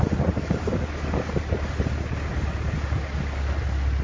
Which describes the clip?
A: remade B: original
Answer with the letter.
B